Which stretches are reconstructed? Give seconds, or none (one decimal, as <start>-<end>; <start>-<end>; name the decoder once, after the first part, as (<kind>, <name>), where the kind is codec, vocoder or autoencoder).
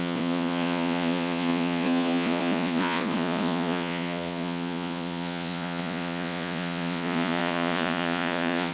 0.0-8.7 (vocoder, Vocos)